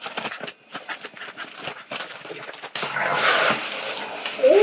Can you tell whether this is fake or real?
real